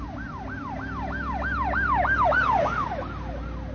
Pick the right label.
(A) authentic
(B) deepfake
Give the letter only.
A